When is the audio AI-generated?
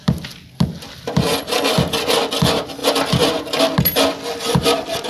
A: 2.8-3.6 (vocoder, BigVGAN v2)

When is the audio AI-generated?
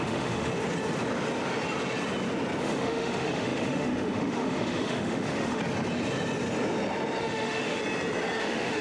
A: 0.0-0.5 (autoencoder, DAC-VAE); 2.6-5.6; 7.2-7.8; 8.4-8.8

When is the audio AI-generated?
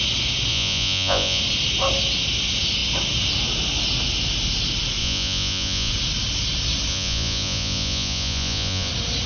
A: 0.5-1.4 (vocoder, Vocos); 5.0-5.9; 6.9-8.9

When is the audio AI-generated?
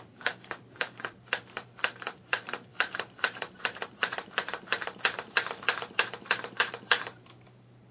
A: 0.0-7.9 (vocoder, BigVGAN v2)